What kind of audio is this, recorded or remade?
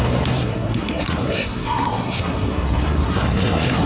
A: remade